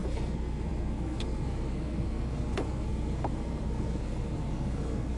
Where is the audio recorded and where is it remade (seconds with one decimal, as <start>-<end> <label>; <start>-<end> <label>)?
0.0-5.2 remade